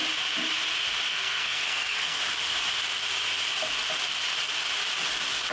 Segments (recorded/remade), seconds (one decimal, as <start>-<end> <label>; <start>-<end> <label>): 0.0-1.1 recorded; 1.1-2.2 remade; 2.2-5.5 recorded